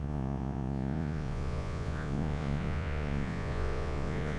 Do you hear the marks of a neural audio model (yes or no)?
yes